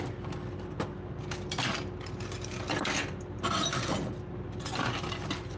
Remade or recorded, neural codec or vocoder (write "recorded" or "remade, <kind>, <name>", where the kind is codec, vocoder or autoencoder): recorded